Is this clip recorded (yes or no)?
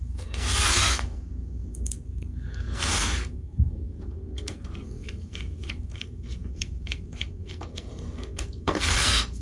no